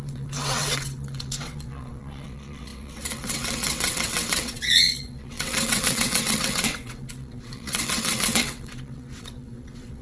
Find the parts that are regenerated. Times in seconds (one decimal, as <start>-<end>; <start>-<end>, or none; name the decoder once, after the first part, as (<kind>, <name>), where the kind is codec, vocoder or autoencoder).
0.0-10.0 (vocoder, WaveNeXt)